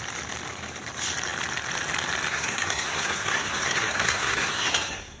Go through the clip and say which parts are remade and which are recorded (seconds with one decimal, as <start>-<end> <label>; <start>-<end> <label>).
0.0-2.3 recorded; 2.3-5.2 remade